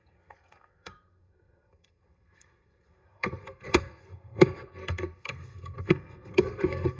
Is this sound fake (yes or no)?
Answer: yes